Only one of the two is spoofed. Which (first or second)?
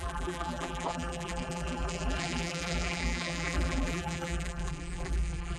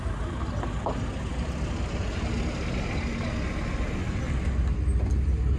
first